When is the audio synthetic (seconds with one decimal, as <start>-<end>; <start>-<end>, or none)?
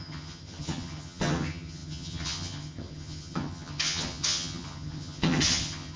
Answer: 0.0-6.0